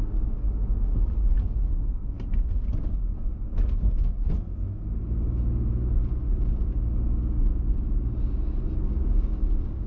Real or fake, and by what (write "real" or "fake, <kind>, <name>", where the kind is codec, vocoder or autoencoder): real